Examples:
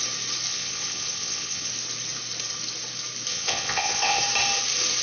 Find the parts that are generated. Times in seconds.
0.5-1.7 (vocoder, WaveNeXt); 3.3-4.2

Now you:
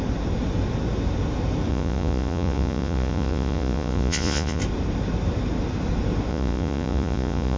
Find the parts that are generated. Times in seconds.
1.7-4.6 (vocoder, Vocos); 6.3-7.6

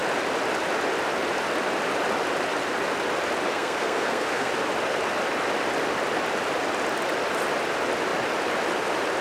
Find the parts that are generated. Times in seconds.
3.5-4.5 (codec, SNAC)

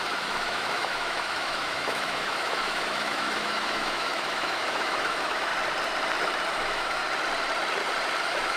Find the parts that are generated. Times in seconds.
0.0-5.5 (autoencoder, DAC-VAE); 6.5-7.0; 8.2-8.6